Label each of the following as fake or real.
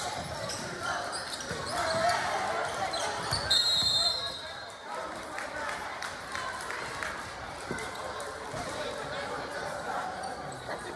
fake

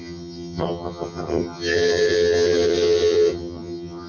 fake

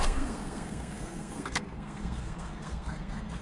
fake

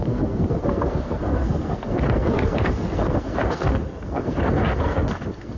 fake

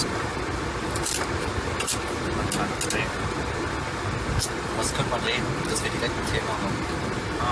real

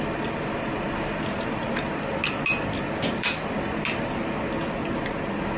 real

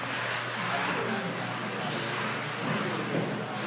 real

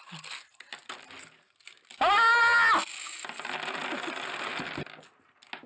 real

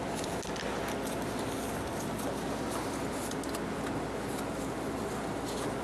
real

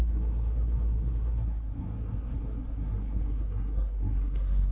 fake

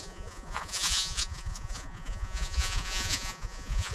fake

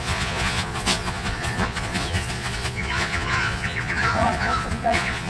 fake